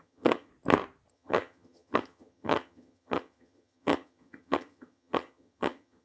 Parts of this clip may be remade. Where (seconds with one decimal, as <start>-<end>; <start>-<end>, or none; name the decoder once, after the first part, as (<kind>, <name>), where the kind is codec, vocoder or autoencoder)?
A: 0.0-0.5 (vocoder, HiFi-GAN); 1.1-6.0